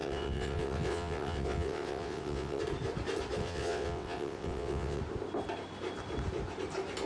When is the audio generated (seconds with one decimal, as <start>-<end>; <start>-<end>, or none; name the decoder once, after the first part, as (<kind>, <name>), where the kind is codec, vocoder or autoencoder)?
0.0-2.6 (vocoder, WaveNeXt); 3.4-5.0